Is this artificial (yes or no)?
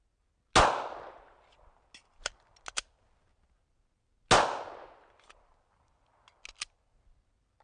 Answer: no